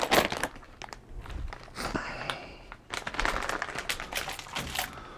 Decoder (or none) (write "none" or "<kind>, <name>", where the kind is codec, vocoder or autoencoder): none